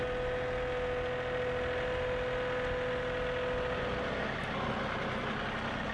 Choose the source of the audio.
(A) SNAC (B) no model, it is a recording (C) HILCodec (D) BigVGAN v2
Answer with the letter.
B